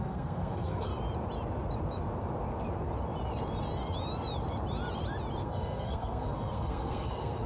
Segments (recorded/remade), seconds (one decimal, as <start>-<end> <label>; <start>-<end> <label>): 0.0-0.9 remade; 0.9-5.4 recorded; 5.4-7.5 remade